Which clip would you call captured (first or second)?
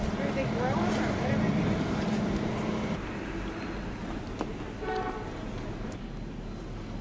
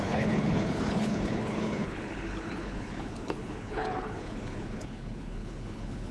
first